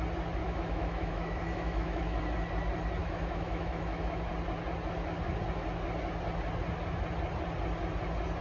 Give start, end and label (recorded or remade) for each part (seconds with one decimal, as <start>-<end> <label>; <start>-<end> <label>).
0.0-0.4 recorded; 0.4-2.2 remade; 2.2-3.0 recorded; 3.0-4.3 remade; 4.3-8.4 recorded